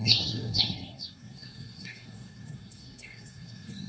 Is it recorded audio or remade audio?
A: remade